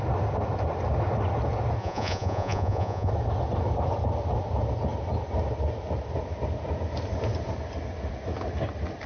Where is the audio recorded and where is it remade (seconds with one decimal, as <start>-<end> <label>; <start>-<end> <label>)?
0.0-1.8 recorded; 1.8-3.1 remade; 3.1-9.1 recorded